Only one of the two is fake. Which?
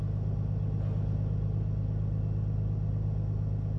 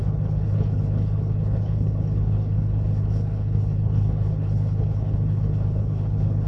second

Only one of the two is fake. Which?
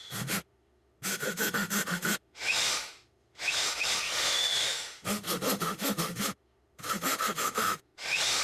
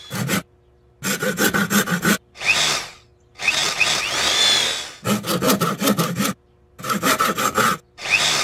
first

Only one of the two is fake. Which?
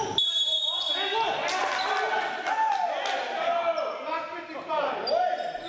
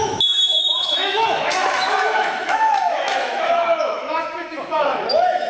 second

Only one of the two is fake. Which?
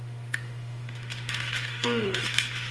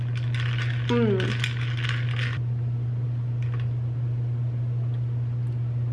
first